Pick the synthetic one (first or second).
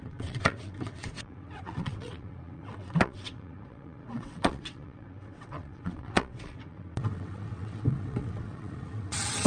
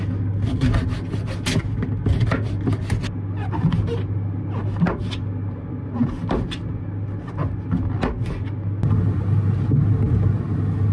first